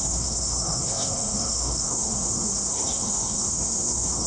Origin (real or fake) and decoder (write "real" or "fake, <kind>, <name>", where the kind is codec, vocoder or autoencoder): fake, codec, SNAC